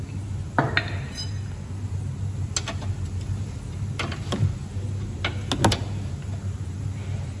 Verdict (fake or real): real